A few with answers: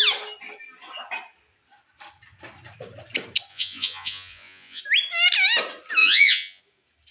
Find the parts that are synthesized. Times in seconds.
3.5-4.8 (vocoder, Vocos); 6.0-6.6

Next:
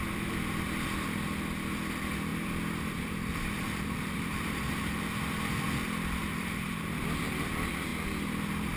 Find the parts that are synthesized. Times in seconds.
2.3-5.0 (vocoder, BigVGAN v2); 6.2-7.0

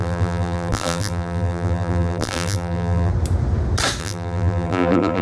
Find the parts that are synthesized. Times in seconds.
0.0-3.1 (vocoder, BigVGAN v2); 4.0-5.2